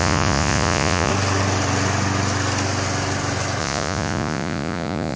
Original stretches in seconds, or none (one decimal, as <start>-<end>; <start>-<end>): 1.1-3.6